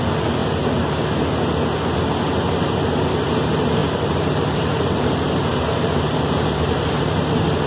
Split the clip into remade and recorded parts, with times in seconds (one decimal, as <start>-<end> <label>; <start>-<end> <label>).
0.0-0.4 remade; 0.4-3.1 recorded; 3.1-7.7 remade